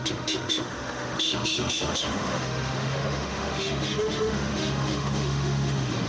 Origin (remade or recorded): remade